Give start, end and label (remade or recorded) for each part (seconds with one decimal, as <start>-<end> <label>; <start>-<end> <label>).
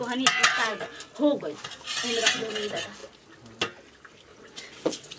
0.0-4.3 recorded; 4.3-5.2 remade